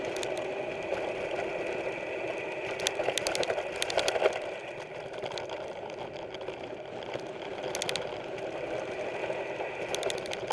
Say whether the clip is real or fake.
real